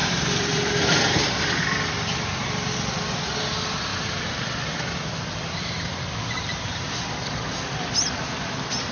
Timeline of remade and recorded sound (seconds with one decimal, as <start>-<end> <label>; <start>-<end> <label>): 0.0-1.6 remade; 1.6-6.5 recorded; 6.5-7.1 remade; 7.1-8.9 recorded

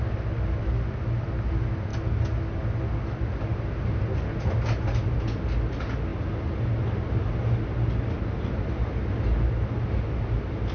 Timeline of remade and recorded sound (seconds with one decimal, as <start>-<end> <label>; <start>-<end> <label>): 0.0-10.7 recorded

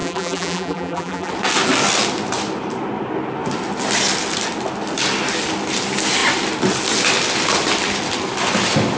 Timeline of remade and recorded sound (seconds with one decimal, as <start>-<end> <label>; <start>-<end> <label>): 0.0-1.3 remade; 1.3-9.0 recorded